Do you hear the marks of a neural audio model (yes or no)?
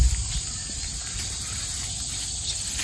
no